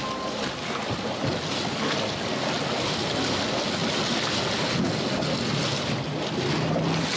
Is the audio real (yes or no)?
yes